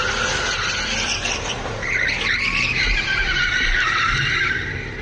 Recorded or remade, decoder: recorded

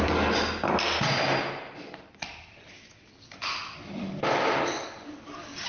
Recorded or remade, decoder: recorded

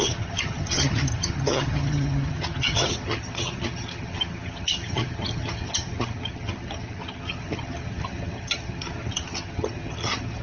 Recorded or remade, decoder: remade, vocoder, HiFi-GAN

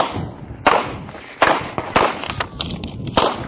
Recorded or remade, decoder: recorded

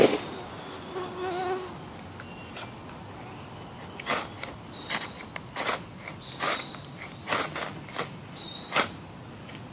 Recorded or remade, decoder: recorded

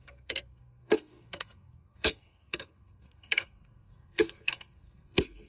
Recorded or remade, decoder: remade, codec, SNAC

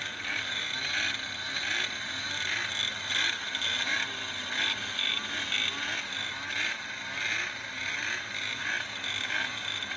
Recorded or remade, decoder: recorded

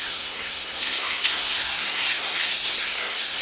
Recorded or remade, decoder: remade, codec, SNAC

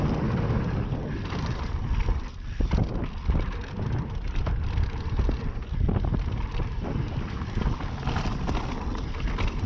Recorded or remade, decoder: remade, vocoder, BigVGAN v2